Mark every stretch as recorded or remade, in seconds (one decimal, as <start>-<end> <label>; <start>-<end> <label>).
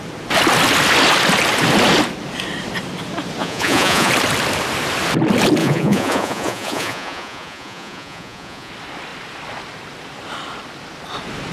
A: 0.0-3.4 recorded; 3.4-4.1 remade; 4.1-5.6 recorded; 5.6-8.7 remade; 8.7-11.5 recorded